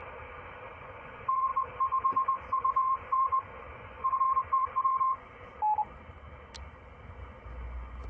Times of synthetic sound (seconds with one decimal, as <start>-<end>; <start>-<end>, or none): 0.8-5.5; 6.7-8.1